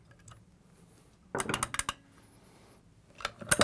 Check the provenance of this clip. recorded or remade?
recorded